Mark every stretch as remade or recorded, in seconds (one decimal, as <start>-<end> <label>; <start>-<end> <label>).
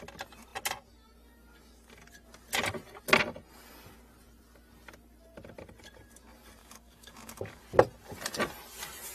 0.0-6.6 recorded; 6.6-7.6 remade; 7.6-9.1 recorded